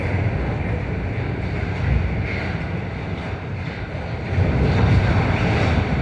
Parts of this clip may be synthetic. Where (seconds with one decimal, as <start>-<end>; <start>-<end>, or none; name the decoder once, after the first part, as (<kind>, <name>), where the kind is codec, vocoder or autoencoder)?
3.2-3.7 (vocoder, BigVGAN v2)